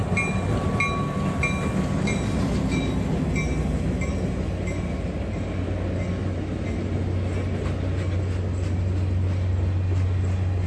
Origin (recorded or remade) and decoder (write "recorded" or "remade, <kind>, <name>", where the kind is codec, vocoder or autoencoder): recorded